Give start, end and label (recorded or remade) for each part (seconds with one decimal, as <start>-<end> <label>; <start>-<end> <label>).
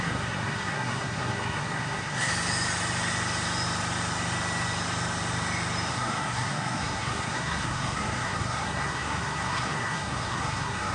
0.0-2.3 remade; 2.3-5.9 recorded; 5.9-10.9 remade